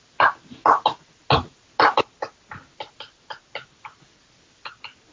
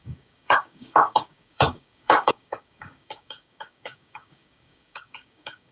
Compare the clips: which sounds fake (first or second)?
second